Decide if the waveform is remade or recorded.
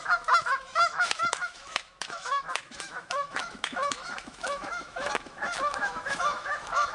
remade